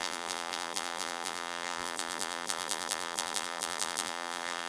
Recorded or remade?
remade